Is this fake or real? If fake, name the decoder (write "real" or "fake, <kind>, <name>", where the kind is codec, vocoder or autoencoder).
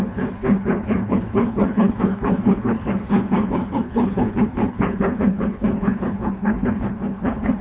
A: fake, codec, HILCodec